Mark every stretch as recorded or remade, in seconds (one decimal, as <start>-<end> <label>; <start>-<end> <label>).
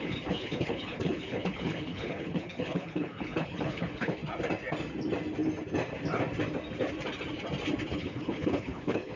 0.0-4.2 remade; 4.2-7.9 recorded; 7.9-9.2 remade